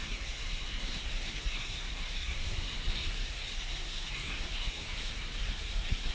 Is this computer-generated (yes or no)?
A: yes